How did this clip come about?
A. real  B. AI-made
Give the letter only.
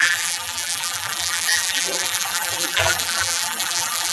B